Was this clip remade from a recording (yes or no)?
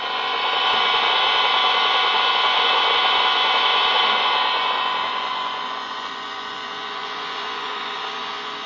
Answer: yes